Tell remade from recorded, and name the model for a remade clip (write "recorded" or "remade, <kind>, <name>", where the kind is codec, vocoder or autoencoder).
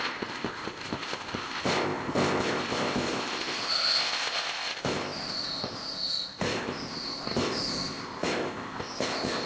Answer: remade, codec, ZipCodec